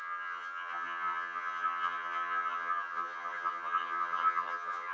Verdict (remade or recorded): remade